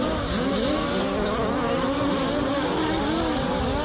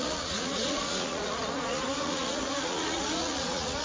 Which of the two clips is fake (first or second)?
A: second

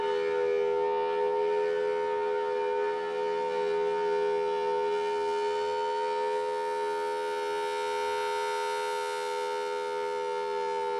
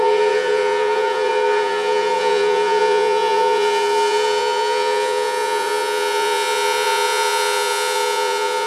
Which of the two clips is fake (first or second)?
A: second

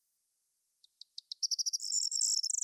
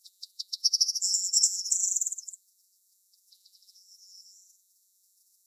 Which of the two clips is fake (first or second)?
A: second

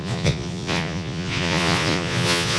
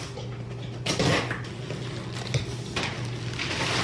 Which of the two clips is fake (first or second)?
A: first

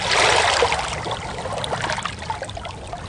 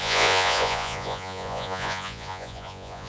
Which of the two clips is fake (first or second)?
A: second